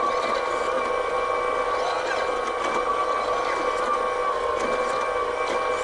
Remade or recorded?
recorded